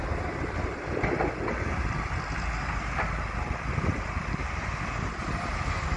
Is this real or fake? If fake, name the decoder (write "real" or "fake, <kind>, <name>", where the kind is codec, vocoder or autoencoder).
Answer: real